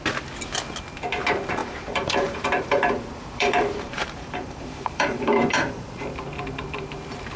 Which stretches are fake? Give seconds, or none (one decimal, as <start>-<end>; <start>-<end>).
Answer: 1.6-5.9